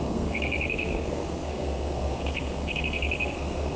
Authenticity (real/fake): fake